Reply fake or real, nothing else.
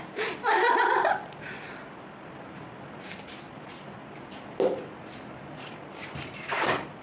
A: real